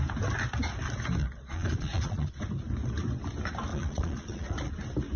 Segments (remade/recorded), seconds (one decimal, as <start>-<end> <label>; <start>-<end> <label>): 0.0-1.2 recorded; 1.2-2.4 remade; 2.4-3.7 recorded; 3.7-4.7 remade; 4.7-5.2 recorded